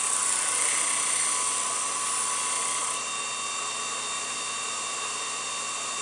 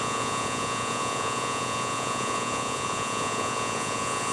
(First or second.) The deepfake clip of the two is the second